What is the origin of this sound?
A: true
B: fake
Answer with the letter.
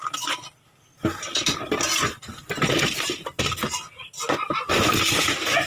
A